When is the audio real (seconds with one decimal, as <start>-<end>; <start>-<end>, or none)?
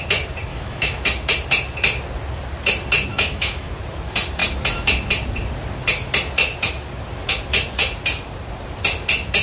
0.0-0.5; 1.0-3.1; 3.7-9.4